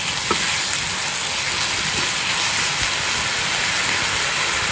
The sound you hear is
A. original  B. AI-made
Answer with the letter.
A